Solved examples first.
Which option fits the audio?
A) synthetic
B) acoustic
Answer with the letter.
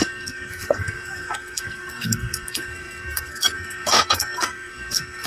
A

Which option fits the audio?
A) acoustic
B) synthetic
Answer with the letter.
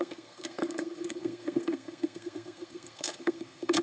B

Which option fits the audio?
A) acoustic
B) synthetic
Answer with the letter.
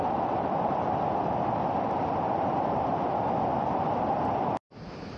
A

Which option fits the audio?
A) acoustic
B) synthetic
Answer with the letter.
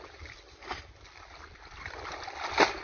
A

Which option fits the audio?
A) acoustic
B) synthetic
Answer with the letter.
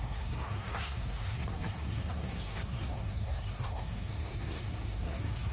B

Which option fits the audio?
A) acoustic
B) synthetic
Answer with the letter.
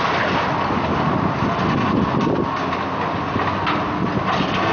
A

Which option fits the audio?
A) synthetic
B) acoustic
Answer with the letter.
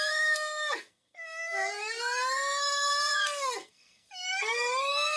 A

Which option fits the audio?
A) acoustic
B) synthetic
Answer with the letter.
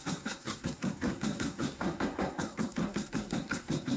B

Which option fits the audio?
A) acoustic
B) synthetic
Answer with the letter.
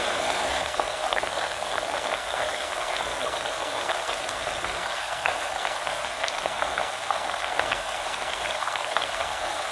B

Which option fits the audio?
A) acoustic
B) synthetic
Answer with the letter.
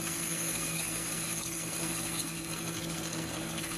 B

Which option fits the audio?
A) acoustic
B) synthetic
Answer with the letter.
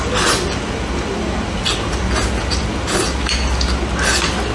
A